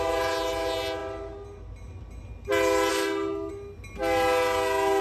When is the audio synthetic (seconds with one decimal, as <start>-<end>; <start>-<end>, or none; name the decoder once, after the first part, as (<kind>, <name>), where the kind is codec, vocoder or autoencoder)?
2.9-3.5 (codec, SNAC)